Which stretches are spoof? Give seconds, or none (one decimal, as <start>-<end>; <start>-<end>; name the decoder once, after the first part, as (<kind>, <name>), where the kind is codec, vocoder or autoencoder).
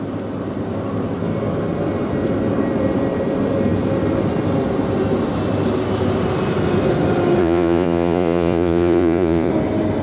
7.4-9.5 (vocoder, Vocos)